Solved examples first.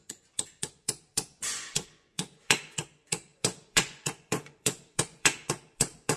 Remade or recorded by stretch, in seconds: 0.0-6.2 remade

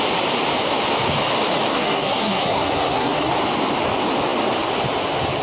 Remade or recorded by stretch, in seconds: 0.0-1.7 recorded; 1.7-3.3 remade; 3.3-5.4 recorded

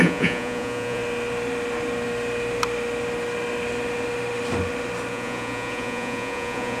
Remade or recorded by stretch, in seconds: 0.0-1.0 remade; 1.0-5.1 recorded; 5.1-6.8 remade

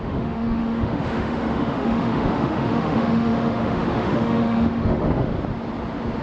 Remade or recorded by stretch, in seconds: 0.0-5.3 remade; 5.3-6.2 recorded